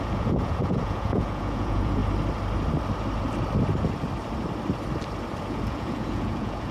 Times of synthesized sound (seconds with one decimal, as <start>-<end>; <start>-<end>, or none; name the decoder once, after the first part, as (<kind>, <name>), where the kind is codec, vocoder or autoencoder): 0.0-2.0 (vocoder, Vocos); 5.4-6.7